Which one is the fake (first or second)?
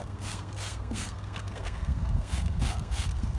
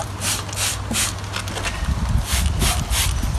first